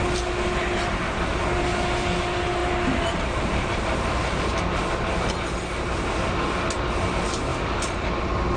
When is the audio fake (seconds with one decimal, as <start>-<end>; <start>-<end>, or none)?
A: 2.6-4.4; 7.5-8.1